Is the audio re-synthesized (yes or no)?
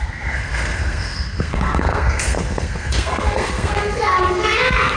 yes